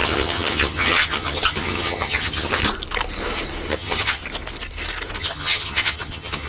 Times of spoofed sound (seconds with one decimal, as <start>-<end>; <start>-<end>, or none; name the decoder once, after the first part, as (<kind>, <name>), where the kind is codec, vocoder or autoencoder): 0.0-2.6 (vocoder, HiFi-GAN); 3.7-4.2; 5.2-6.5